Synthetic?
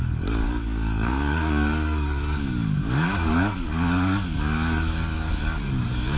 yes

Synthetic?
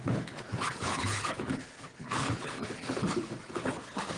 yes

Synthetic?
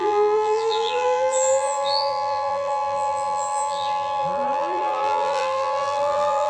yes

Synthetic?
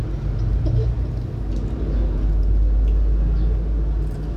no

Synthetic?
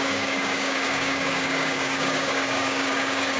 yes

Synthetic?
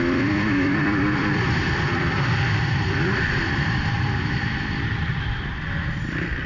yes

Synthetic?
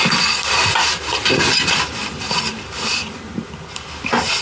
no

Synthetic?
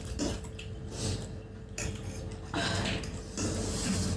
no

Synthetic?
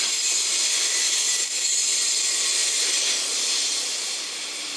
no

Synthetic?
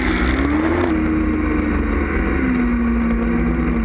no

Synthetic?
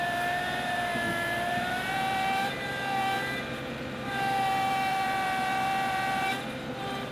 yes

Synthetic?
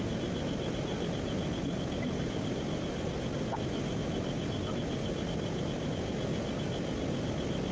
no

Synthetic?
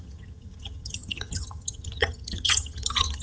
yes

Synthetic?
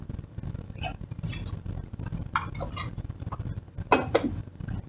no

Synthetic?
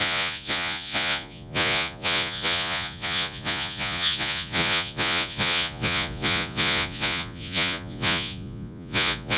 yes